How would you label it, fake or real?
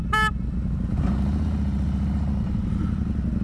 real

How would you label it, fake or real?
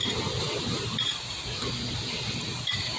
real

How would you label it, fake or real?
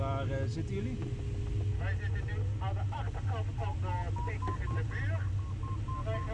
real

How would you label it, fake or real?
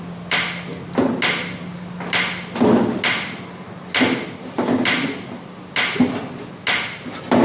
real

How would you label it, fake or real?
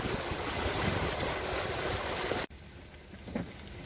real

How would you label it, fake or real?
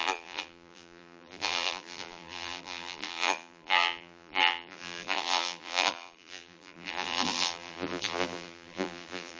fake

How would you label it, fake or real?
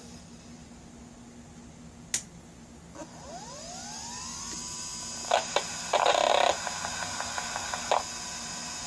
real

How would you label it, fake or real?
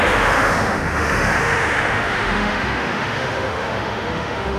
fake